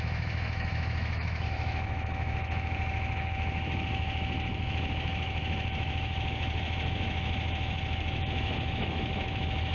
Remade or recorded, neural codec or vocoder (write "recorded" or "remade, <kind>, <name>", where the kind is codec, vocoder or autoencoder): remade, autoencoder, DAC-VAE